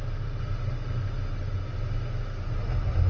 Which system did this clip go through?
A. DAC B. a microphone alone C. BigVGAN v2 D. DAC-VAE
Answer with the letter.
B